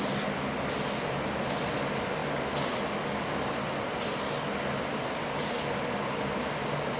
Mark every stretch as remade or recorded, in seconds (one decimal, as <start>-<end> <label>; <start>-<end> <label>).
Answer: 0.0-7.0 recorded